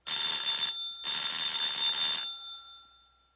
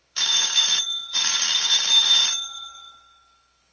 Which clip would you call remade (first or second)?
second